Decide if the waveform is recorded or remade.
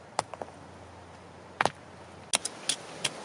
recorded